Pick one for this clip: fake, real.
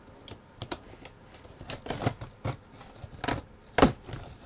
real